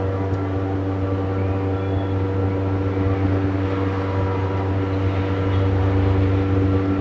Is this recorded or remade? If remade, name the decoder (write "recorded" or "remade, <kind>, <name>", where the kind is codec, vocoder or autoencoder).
recorded